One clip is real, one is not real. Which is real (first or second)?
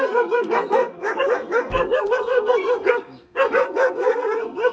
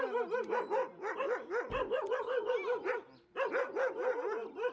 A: second